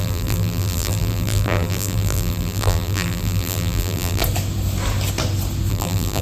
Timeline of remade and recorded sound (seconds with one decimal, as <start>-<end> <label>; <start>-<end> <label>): 0.0-4.2 remade; 4.2-5.7 recorded; 5.7-6.2 remade